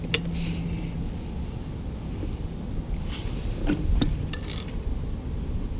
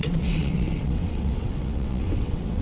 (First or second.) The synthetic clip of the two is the second